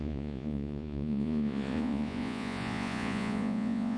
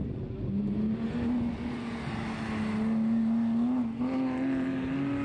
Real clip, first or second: second